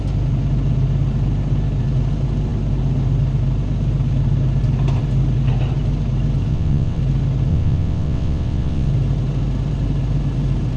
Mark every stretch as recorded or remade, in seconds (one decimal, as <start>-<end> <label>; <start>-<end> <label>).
0.0-6.5 recorded; 6.5-7.0 remade; 7.0-7.5 recorded; 7.5-8.9 remade; 8.9-10.8 recorded